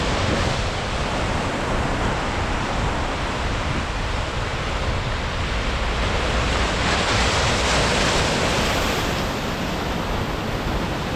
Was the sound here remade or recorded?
remade